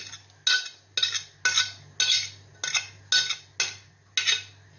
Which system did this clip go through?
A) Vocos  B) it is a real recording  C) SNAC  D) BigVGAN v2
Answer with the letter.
B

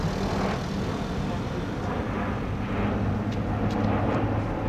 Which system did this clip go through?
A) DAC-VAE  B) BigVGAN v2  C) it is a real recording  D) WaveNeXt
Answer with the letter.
C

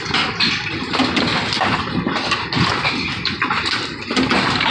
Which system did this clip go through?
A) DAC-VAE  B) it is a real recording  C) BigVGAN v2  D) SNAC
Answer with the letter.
B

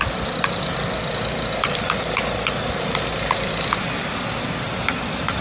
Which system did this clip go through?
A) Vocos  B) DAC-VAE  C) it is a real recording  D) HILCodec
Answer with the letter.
C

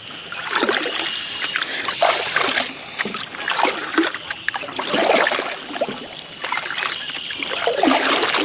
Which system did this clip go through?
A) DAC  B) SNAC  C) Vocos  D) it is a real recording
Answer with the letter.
D